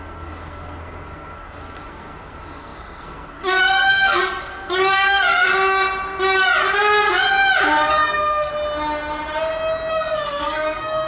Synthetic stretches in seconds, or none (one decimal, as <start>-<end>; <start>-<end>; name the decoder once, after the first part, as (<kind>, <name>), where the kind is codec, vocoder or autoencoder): 0.0-5.5 (codec, SNAC); 7.9-8.5; 9.9-11.1